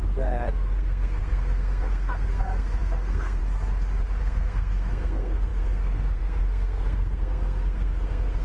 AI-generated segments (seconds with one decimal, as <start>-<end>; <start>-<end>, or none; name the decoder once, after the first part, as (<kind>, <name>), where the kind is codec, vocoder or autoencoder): 0.0-3.4 (codec, SNAC); 4.2-8.4